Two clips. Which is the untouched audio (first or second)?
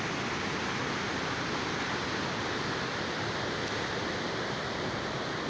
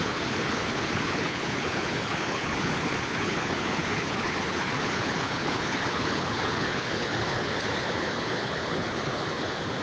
first